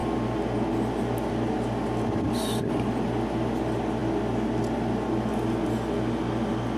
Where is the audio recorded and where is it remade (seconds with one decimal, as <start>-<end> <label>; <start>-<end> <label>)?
0.0-6.8 recorded